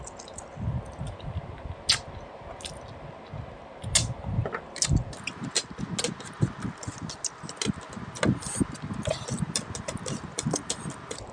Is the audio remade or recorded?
recorded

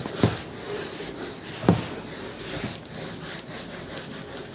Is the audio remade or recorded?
recorded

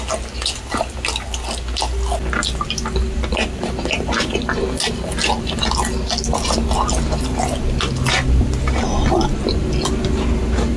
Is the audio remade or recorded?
recorded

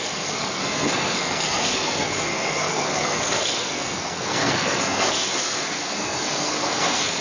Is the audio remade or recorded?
remade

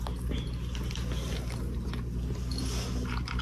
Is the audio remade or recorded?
recorded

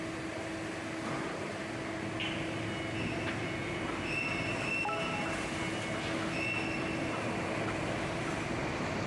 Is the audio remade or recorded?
recorded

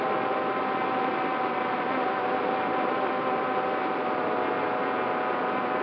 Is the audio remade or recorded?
recorded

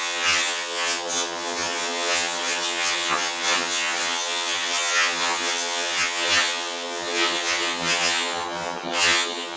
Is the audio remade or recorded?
remade